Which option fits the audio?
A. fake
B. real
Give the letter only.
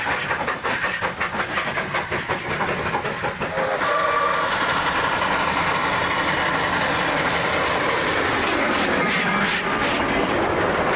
B